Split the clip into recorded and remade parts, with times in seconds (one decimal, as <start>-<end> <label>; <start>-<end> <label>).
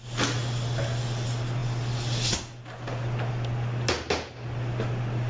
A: 0.0-5.3 recorded